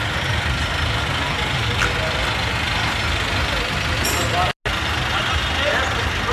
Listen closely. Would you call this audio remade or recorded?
recorded